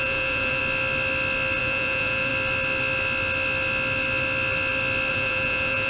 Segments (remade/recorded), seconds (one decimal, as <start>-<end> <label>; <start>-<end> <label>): 0.0-0.6 remade; 0.6-1.6 recorded; 1.6-2.3 remade; 2.3-5.1 recorded; 5.1-5.9 remade